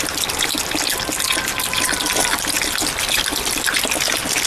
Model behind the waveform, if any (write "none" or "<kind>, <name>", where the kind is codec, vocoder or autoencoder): none